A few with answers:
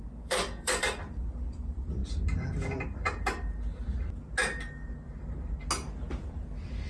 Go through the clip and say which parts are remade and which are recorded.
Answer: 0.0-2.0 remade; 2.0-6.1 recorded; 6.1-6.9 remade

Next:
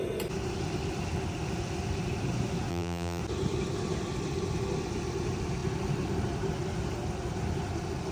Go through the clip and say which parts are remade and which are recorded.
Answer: 0.0-2.7 recorded; 2.7-3.2 remade; 3.2-8.1 recorded

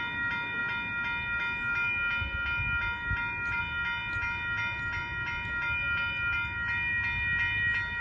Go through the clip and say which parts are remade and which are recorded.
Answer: 0.0-8.0 recorded